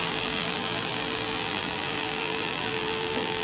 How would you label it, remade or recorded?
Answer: remade